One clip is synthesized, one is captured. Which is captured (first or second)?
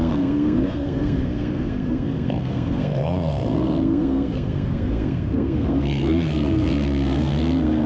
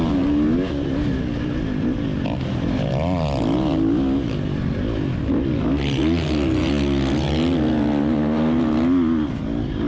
second